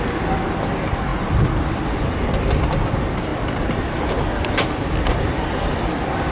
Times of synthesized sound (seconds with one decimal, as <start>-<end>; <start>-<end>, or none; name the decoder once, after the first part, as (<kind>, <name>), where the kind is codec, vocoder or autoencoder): none